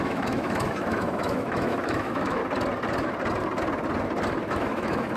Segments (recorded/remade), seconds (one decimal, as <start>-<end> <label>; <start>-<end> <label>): 0.0-2.4 remade; 2.4-4.5 recorded; 4.5-5.2 remade